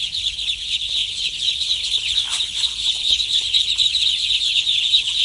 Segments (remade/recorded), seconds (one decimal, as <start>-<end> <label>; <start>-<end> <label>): 0.0-5.2 remade